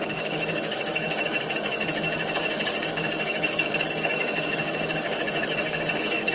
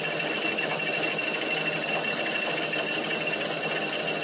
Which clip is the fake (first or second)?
first